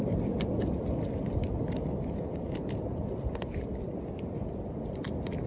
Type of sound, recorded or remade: recorded